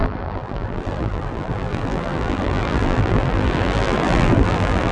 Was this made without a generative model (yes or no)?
no